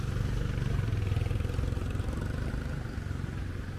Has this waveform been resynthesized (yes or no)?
yes